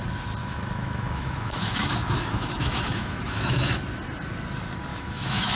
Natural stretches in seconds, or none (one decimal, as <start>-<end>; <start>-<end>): 0.0-0.4; 3.8-4.9